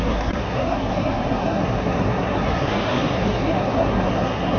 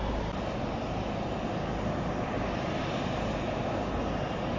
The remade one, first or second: first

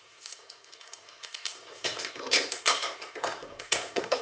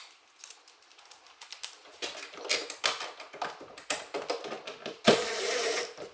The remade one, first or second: first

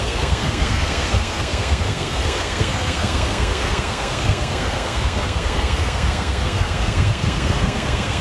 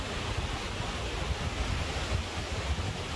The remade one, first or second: first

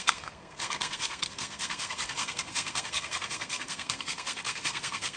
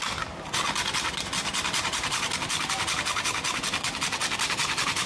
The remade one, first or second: first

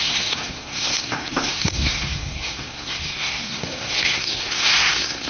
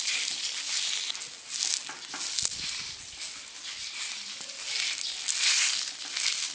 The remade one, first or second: first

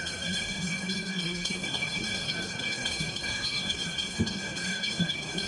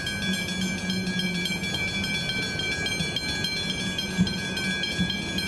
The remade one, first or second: first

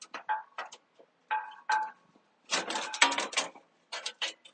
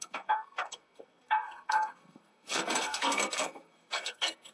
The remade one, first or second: second